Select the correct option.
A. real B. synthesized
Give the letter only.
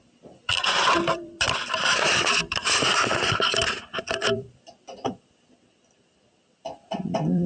B